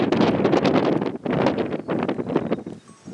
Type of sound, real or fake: real